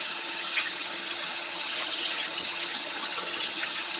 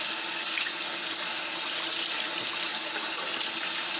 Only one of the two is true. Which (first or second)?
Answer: second